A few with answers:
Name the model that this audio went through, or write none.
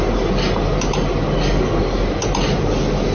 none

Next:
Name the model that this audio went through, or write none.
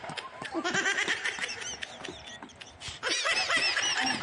none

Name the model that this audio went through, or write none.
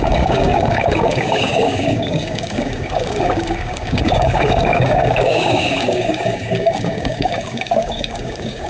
codec, DAC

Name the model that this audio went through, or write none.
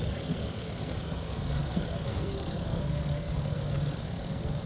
codec, SNAC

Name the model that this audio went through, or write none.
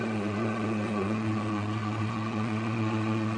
vocoder, Vocos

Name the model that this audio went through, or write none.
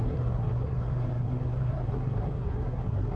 codec, SNAC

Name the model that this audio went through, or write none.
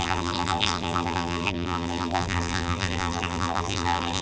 vocoder, BigVGAN v2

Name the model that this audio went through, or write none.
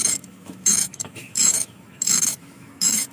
autoencoder, DAC-VAE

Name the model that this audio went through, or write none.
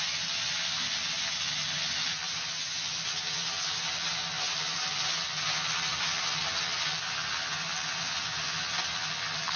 none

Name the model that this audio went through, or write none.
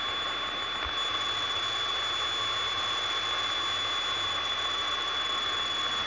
none